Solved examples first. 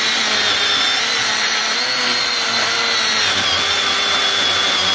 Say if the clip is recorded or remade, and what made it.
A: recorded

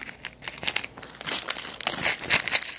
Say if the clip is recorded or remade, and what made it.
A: recorded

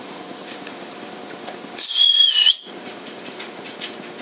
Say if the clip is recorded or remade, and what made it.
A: remade, vocoder, Vocos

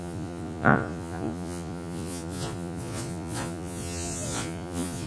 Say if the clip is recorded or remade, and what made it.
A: remade, vocoder, Vocos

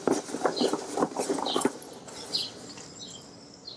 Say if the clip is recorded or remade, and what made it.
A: recorded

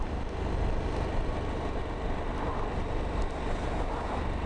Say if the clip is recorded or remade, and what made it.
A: recorded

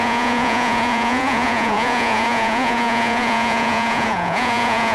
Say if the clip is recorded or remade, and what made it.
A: remade, vocoder, Vocos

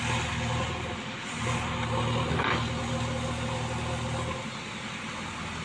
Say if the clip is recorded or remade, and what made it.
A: recorded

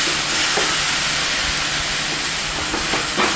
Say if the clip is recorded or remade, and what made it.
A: recorded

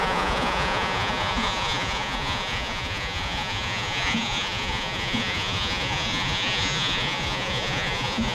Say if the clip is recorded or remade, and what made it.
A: remade, vocoder, Vocos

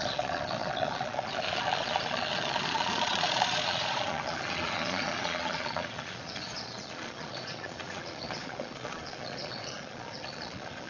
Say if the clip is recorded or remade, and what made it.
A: remade, vocoder, Vocos